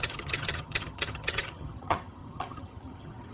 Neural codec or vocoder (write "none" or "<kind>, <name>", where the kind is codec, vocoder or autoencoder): vocoder, HiFi-GAN